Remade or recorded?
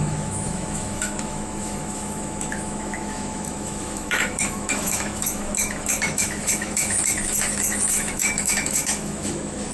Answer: remade